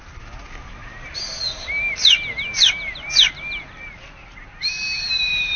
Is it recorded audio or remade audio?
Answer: recorded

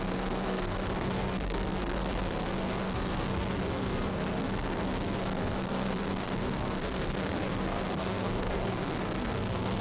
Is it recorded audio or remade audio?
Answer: remade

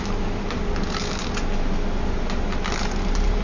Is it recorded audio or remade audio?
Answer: recorded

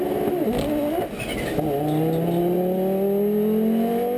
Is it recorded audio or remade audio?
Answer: recorded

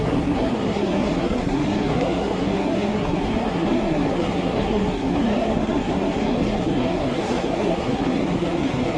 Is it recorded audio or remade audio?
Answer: remade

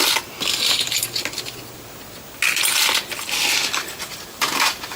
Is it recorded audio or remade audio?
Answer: recorded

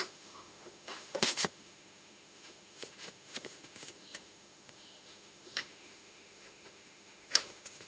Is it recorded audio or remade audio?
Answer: remade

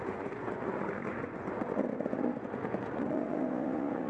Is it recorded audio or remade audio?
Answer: remade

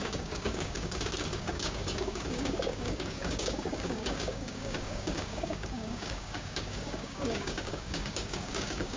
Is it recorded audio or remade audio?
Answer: remade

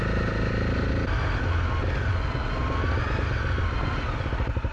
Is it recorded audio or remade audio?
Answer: recorded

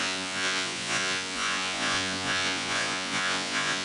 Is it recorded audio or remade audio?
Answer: remade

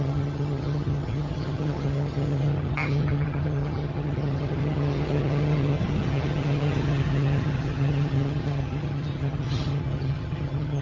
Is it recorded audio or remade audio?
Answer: remade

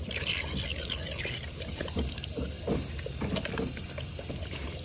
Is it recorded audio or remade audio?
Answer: recorded